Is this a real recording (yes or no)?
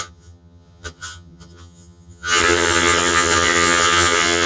no